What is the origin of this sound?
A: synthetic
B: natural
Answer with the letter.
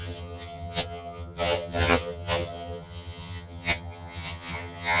A